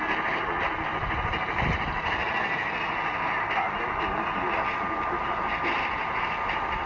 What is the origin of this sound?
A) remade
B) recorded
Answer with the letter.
B